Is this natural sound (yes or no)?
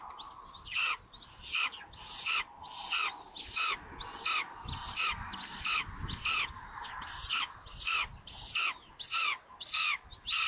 yes